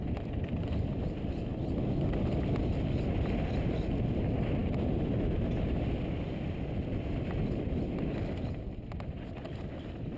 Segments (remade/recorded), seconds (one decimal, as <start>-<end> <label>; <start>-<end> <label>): 0.0-10.2 recorded